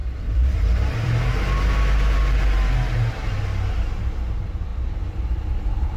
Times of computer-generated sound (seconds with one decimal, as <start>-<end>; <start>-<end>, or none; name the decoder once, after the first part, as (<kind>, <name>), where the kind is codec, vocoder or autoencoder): 0.0-1.3 (vocoder, BigVGAN v2); 4.7-6.0